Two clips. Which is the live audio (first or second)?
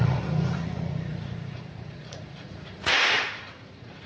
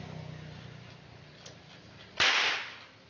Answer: second